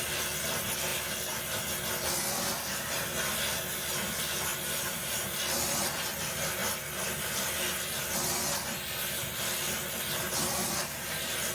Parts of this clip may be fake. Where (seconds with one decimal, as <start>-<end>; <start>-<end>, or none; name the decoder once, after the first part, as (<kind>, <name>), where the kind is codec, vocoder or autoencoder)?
4.5-5.4 (vocoder, BigVGAN v2)